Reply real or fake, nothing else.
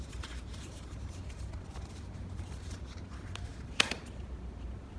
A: real